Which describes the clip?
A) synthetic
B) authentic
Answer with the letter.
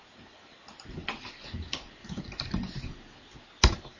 B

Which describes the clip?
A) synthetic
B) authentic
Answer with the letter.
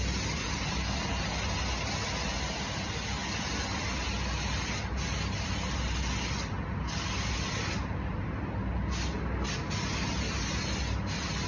B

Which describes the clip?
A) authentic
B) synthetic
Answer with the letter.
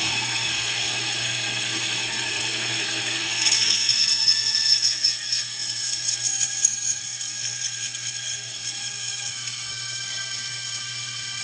B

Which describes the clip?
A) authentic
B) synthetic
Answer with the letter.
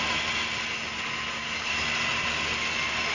A